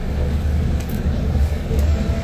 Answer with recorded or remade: remade